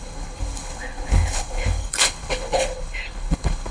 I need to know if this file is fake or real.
fake